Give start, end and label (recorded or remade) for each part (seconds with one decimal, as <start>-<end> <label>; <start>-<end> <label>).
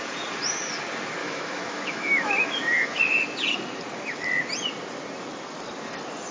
0.0-1.2 recorded; 1.2-3.0 remade; 3.0-6.3 recorded